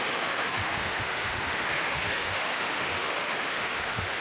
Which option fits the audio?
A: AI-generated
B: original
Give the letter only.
A